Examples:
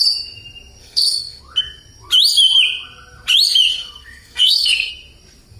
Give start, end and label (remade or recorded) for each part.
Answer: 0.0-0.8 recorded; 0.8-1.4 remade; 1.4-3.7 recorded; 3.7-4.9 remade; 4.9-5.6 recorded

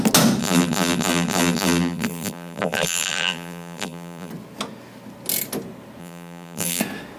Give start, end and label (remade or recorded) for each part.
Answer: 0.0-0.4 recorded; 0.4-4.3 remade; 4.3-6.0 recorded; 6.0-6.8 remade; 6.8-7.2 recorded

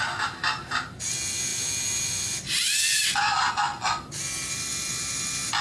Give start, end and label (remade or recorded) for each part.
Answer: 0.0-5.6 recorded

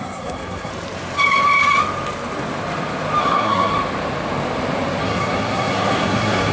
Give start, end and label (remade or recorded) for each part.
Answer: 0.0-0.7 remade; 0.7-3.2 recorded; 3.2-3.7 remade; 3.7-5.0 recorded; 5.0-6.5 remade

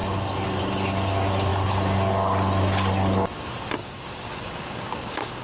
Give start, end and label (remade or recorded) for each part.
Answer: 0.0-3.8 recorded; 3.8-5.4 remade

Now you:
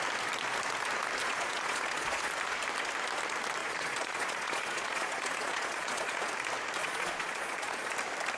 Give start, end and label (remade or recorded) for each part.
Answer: 0.0-1.2 recorded; 1.2-2.3 remade; 2.3-3.6 recorded; 3.6-6.3 remade; 6.3-6.8 recorded; 6.8-7.9 remade; 7.9-8.4 recorded